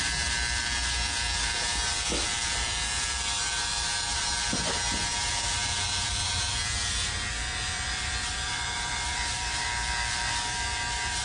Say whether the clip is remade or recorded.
remade